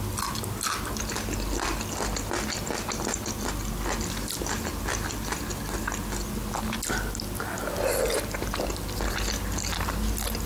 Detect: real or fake real